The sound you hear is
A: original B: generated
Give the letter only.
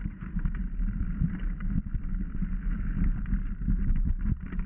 A